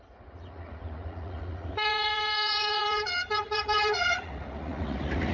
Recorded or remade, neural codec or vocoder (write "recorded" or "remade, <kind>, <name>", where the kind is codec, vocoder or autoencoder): remade, vocoder, Vocos